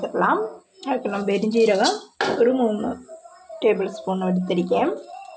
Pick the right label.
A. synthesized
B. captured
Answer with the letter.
B